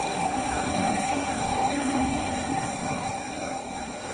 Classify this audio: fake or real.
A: fake